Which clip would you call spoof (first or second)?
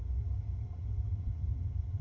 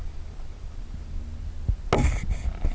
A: first